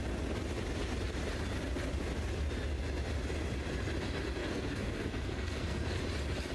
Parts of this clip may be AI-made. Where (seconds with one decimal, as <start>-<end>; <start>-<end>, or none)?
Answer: 4.4-6.0

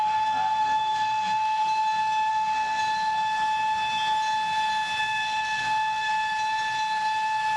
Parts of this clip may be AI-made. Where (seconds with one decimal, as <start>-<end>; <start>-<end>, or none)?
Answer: 0.0-1.6; 2.3-2.8; 5.0-6.1

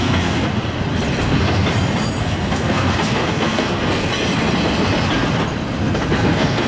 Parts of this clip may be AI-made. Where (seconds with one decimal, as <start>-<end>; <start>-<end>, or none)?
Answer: 0.0-0.5; 1.2-1.6; 2.2-4.1; 5.8-6.7

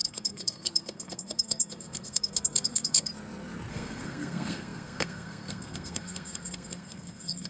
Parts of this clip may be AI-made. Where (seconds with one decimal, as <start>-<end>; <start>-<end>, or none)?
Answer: 0.0-3.1; 3.7-7.5

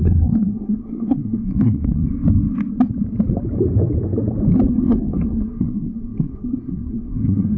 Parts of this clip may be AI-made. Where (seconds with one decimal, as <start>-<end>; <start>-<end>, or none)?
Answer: 0.0-2.1; 4.7-7.6

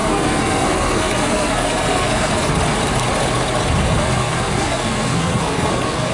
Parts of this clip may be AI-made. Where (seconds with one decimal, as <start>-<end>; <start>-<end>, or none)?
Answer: 0.0-2.5; 3.8-6.1

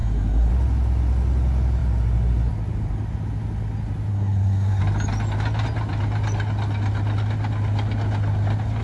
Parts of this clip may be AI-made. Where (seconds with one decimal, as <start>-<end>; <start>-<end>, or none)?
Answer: 0.0-0.5; 4.1-4.8